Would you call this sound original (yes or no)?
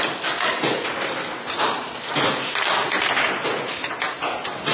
yes